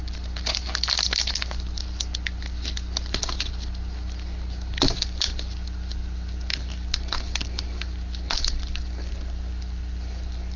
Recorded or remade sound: recorded